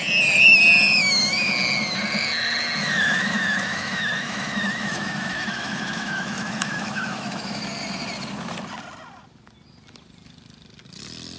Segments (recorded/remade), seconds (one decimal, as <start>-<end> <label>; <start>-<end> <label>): 0.0-1.0 recorded; 1.0-1.5 remade; 1.5-2.8 recorded; 2.8-7.6 remade; 7.6-11.4 recorded